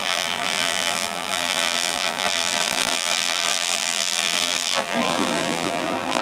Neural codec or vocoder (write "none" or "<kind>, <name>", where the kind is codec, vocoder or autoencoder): vocoder, BigVGAN v2